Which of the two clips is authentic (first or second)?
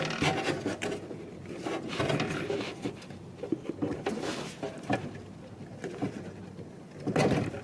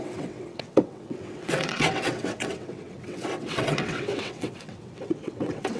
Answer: first